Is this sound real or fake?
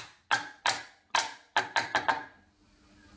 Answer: real